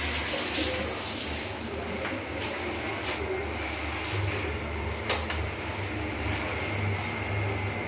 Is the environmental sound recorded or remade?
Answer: recorded